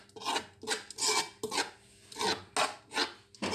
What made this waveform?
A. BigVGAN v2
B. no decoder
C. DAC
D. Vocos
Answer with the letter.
B